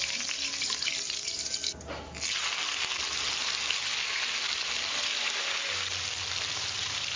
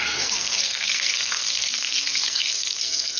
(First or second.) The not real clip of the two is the second